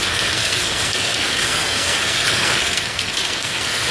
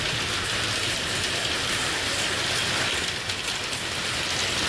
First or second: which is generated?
first